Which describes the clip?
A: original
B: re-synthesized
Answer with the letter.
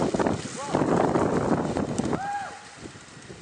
A